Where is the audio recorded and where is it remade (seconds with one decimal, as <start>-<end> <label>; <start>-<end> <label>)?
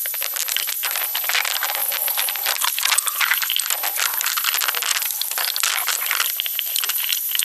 0.0-1.8 recorded; 1.8-3.4 remade; 3.4-4.9 recorded; 4.9-7.4 remade